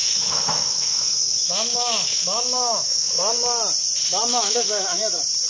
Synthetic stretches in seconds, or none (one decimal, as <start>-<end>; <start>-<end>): 0.0-3.1; 4.3-5.0